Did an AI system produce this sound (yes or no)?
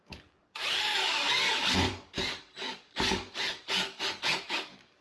yes